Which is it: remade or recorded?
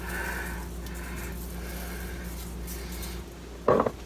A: recorded